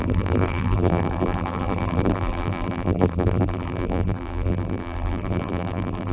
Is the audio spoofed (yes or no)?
yes